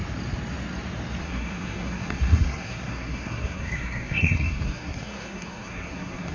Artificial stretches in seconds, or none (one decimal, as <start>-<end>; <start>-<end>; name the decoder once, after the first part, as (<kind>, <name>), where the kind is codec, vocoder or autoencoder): 1.2-6.3 (codec, SNAC)